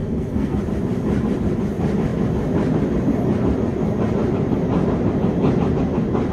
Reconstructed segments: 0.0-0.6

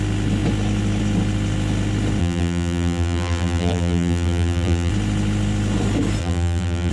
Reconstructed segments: 2.2-4.9; 6.2-6.9

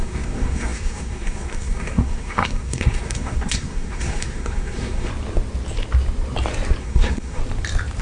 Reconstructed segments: 0.0-5.1; 6.8-7.4

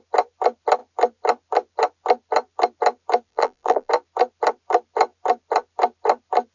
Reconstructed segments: 3.3-3.9

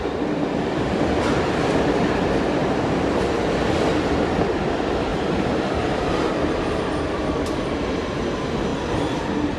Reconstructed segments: 2.6-3.2; 5.1-6.1